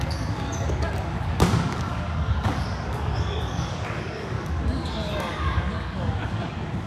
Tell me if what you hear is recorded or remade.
remade